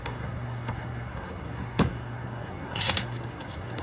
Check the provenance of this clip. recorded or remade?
remade